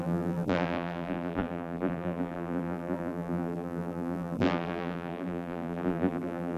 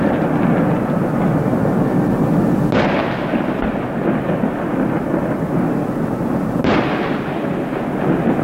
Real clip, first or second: second